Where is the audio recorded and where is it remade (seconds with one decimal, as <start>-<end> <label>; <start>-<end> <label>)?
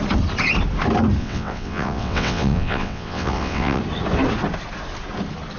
0.0-1.2 recorded; 1.2-3.8 remade; 3.8-5.6 recorded